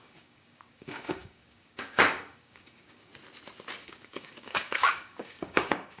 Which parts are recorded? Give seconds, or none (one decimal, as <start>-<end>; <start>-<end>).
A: 3.1-3.8